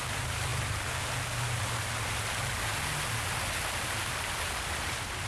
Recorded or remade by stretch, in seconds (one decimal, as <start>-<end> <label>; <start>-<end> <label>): 0.0-5.3 recorded